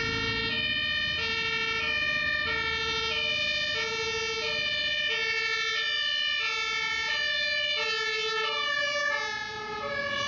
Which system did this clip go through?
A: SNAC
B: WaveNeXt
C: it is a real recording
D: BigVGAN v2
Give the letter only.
C